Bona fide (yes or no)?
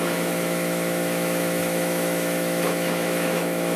no